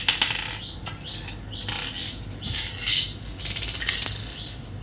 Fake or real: real